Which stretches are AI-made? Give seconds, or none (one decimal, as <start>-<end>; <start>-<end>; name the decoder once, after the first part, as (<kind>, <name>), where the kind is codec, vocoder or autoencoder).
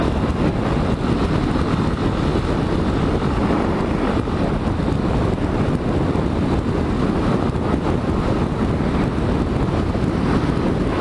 none